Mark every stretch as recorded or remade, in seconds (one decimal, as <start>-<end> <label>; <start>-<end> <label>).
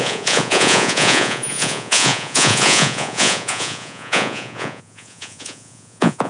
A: 0.0-6.3 remade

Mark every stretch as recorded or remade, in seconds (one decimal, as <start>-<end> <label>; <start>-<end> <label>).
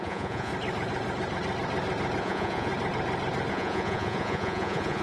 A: 0.0-0.5 remade; 0.5-2.2 recorded; 2.2-2.7 remade; 2.7-3.5 recorded; 3.5-5.0 remade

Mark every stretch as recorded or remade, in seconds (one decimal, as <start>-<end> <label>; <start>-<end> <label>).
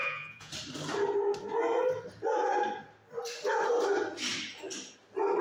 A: 0.0-0.5 remade; 0.5-5.4 recorded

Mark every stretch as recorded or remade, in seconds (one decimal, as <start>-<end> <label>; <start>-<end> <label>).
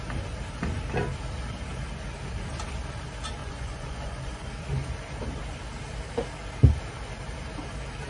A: 0.0-3.4 recorded; 3.4-4.5 remade; 4.5-8.1 recorded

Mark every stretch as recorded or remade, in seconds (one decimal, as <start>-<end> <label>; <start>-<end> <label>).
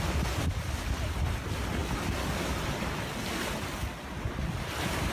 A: 0.0-5.1 recorded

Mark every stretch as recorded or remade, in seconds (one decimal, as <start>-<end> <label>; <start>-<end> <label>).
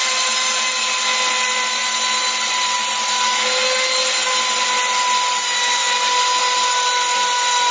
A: 0.0-7.7 recorded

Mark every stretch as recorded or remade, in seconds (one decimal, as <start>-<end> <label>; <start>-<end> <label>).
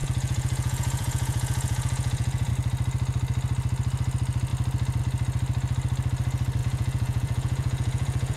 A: 0.0-2.5 remade; 2.5-6.6 recorded; 6.6-8.4 remade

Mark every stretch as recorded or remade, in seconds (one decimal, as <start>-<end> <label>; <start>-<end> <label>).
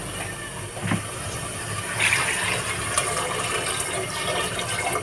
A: 0.0-5.0 recorded